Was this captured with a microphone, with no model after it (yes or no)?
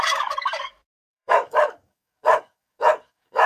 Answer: no